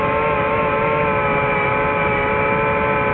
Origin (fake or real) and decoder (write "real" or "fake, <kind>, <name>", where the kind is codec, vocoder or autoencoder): real